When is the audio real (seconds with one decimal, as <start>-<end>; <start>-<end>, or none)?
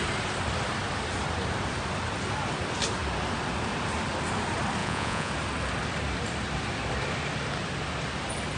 0.0-4.8; 5.3-8.6